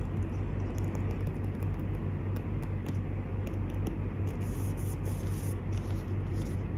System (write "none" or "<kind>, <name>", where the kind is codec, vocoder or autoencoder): none